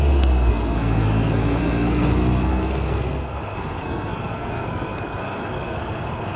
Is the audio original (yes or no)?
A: no